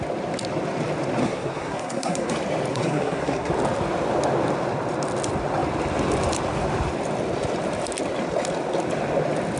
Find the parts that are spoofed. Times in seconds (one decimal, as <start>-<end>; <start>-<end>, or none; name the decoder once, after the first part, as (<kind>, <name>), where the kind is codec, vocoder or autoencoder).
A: 1.2-2.3 (codec, SNAC); 2.7-3.5